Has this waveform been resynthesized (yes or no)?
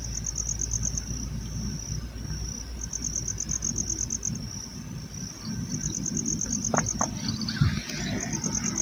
no